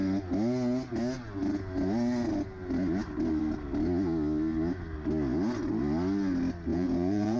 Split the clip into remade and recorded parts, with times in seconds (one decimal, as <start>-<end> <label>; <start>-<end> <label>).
0.0-6.7 recorded; 6.7-7.4 remade